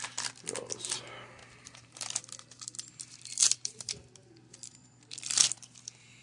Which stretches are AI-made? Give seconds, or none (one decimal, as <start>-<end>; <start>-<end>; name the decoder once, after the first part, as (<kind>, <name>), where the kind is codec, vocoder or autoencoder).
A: 0.0-6.2 (vocoder, BigVGAN v2)